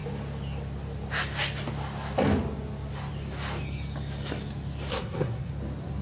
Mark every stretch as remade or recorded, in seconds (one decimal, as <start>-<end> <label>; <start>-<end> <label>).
0.0-4.9 recorded; 4.9-5.5 remade; 5.5-6.0 recorded